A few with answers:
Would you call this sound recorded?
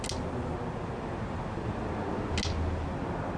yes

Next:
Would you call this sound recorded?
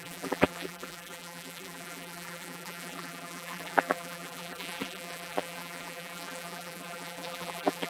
no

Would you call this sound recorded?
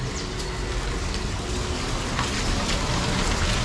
yes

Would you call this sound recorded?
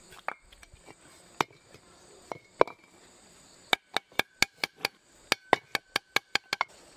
yes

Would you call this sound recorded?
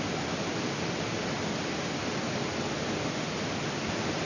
yes